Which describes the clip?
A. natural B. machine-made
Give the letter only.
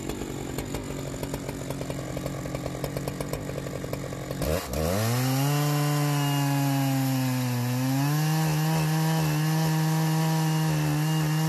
A